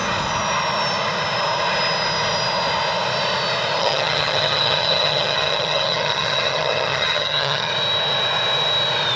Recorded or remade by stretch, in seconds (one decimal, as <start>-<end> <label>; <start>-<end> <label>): 0.0-3.8 recorded; 3.8-7.7 remade; 7.7-9.2 recorded